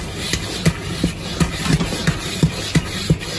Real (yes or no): yes